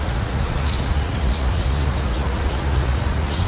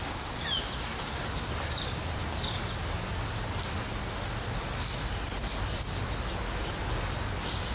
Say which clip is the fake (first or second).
first